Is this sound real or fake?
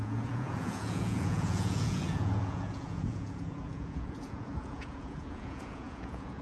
fake